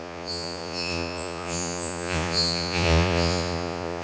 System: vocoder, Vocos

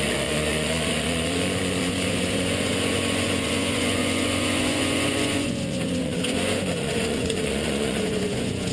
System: vocoder, Vocos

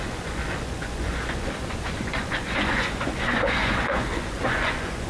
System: vocoder, Vocos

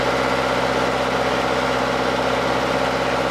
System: none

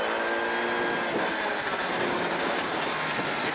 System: none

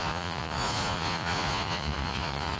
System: vocoder, Vocos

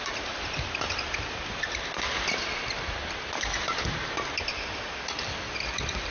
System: none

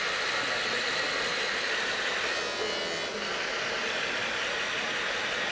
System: none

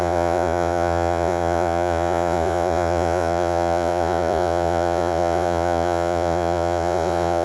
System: vocoder, Vocos